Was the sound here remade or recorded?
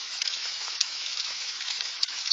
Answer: remade